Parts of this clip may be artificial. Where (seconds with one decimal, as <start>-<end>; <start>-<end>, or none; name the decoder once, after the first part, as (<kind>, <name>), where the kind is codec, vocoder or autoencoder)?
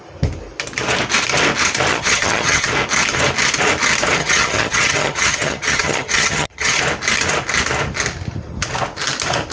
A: 1.9-2.7 (vocoder, HiFi-GAN); 4.2-6.8